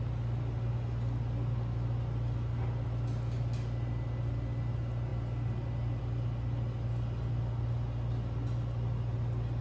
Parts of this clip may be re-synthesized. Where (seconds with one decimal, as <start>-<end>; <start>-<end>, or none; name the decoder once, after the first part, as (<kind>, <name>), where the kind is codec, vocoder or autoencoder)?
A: none